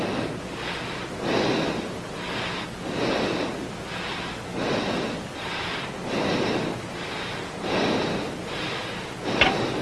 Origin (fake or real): real